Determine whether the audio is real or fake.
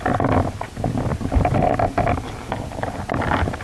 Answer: real